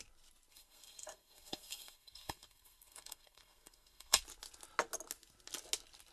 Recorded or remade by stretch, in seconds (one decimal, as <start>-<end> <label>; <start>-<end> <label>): 0.0-0.5 recorded; 0.5-4.2 remade; 4.2-6.1 recorded